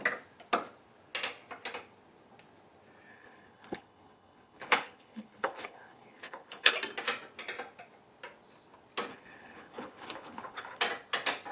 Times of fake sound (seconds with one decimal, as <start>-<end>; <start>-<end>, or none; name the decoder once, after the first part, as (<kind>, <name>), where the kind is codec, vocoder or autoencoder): 3.1-6.7 (codec, HILCodec); 9.1-10.8